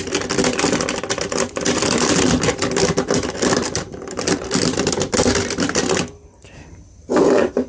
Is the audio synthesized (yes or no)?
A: yes